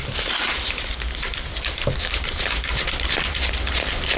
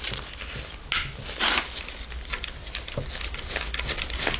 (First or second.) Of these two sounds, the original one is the second